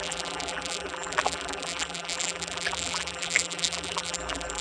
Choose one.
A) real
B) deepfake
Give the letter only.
B